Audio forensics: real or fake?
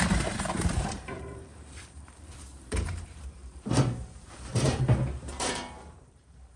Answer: fake